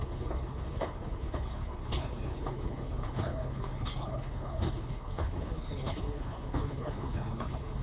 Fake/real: fake